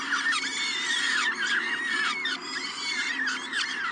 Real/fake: fake